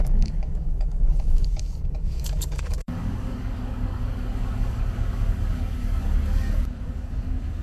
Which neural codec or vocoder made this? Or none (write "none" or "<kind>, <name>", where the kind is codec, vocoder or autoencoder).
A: codec, DAC